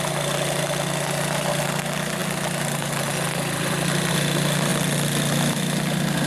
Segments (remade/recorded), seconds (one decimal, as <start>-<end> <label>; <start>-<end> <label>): 0.0-6.3 recorded

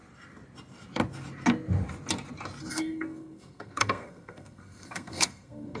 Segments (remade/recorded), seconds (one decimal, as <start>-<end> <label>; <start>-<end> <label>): 0.0-2.7 recorded; 2.7-5.8 remade

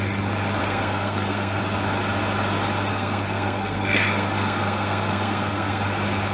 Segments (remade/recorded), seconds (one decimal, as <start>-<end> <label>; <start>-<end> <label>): 0.0-0.6 recorded; 0.6-1.6 remade; 1.6-2.9 recorded; 2.9-5.8 remade; 5.8-6.3 recorded

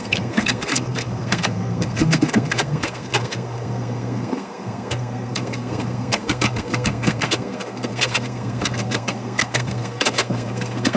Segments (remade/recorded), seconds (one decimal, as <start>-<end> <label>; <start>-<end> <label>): 0.0-11.0 remade

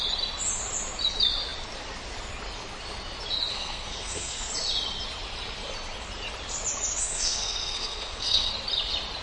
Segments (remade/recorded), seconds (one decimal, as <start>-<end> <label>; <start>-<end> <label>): 0.0-3.5 recorded; 3.5-4.5 remade; 4.5-6.9 recorded; 6.9-8.5 remade; 8.5-9.2 recorded

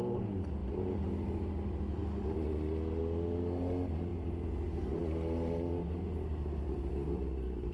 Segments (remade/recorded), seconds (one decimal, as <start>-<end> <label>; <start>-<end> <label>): 0.0-7.7 recorded